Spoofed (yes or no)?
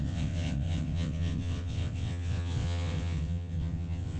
yes